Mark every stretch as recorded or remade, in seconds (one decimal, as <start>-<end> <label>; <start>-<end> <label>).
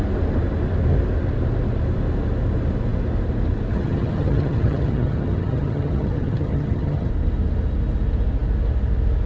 0.0-3.7 recorded; 3.7-7.1 remade; 7.1-9.3 recorded